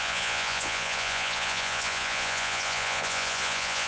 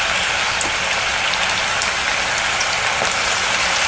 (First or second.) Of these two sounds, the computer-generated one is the first